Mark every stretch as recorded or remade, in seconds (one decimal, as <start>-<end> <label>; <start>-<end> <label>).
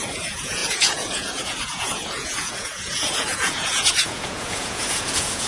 0.0-5.5 remade